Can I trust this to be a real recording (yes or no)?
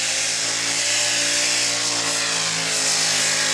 yes